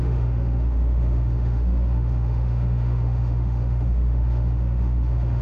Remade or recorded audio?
remade